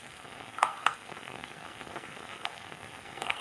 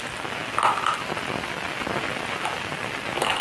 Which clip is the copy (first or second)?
first